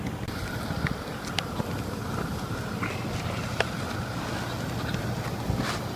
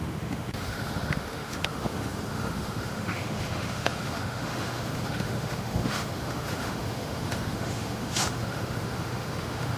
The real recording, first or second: first